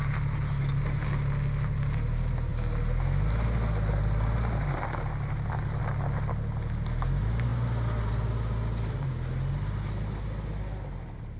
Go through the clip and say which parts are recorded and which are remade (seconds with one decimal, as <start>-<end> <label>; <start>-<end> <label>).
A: 0.0-11.4 recorded